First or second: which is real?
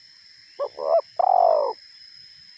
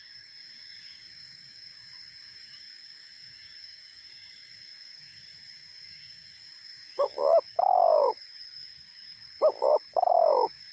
first